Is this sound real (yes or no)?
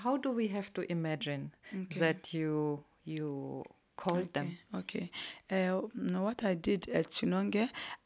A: yes